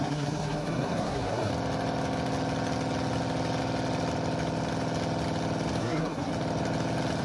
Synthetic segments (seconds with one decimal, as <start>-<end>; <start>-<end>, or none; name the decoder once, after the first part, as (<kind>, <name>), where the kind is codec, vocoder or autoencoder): 0.0-1.5 (codec, SNAC); 5.8-6.3